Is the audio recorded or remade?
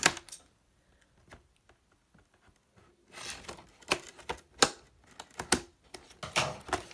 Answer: recorded